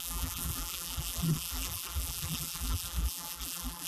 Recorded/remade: remade